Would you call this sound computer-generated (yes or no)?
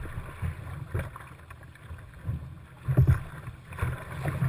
no